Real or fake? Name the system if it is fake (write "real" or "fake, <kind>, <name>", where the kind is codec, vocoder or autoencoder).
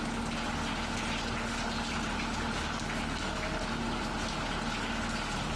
real